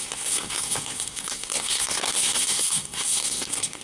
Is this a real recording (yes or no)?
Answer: no